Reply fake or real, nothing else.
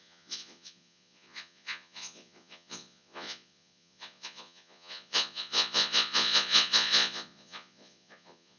fake